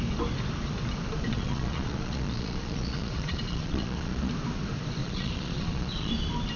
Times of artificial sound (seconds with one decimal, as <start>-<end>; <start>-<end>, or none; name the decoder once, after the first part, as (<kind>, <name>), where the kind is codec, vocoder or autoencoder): 1.3-4.3 (vocoder, Vocos); 5.0-6.1